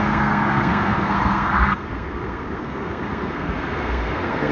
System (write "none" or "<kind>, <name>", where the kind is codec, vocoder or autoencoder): codec, SNAC